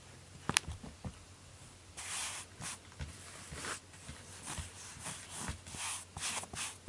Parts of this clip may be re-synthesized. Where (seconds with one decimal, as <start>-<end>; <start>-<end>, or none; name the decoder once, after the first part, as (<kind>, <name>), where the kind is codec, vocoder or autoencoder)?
none